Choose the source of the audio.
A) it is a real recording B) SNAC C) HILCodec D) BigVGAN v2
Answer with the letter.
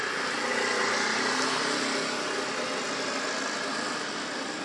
A